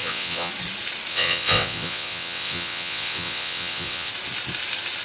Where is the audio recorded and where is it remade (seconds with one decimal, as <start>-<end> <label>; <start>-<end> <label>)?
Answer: 0.0-0.5 remade; 0.5-1.1 recorded; 1.1-4.1 remade; 4.1-5.0 recorded